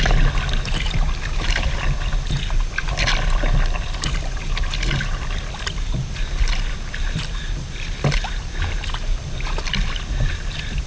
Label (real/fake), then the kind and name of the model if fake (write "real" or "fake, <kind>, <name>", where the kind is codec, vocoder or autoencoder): real